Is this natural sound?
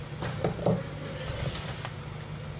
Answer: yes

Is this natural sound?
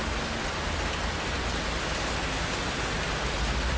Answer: yes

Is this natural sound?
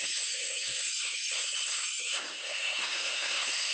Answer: no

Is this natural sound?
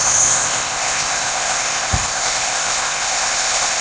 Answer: no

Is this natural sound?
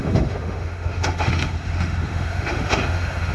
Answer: no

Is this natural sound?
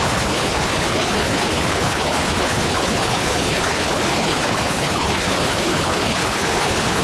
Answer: no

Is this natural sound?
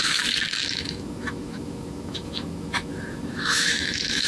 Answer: no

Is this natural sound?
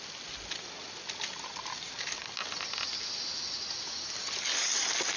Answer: yes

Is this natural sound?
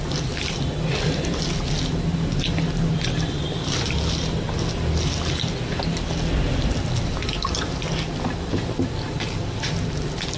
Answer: yes